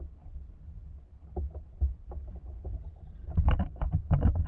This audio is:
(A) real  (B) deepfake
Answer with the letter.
A